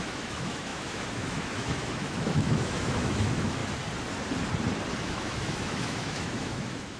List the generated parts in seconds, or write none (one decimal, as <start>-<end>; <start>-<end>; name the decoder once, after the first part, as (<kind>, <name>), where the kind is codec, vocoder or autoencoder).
0.0-3.6 (autoencoder, DAC-VAE); 5.0-7.0